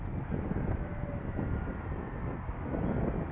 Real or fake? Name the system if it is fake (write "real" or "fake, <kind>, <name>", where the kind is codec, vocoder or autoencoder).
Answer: real